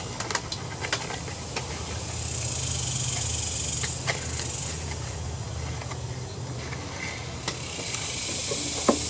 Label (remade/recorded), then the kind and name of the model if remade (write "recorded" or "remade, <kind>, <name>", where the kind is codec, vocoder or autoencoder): recorded